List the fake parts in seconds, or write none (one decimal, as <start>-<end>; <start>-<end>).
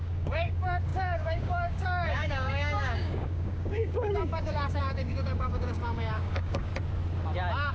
0.0-6.7